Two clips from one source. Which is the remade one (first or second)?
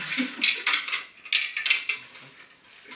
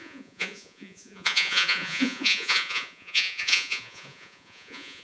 second